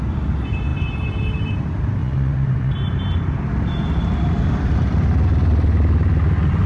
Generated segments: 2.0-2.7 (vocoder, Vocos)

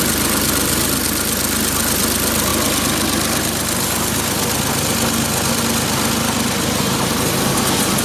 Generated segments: none

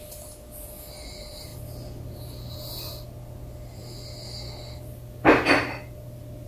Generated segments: none

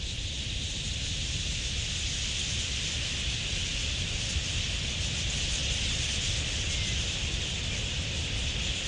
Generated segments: none